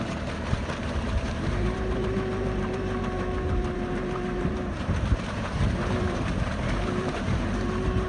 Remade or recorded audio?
remade